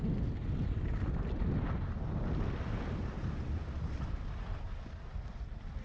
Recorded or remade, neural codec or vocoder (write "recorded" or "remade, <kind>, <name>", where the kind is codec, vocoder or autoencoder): recorded